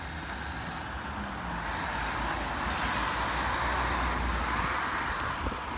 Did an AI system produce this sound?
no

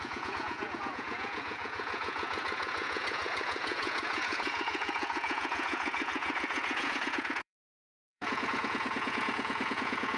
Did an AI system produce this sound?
yes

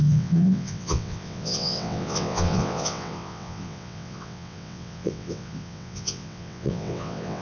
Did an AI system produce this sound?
yes